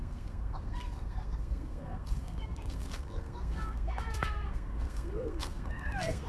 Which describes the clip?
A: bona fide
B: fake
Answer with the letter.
B